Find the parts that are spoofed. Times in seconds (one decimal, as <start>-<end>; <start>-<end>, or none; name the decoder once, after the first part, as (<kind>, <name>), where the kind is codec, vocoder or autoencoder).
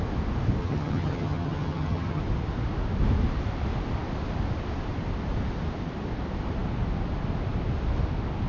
0.6-2.2 (vocoder, HiFi-GAN)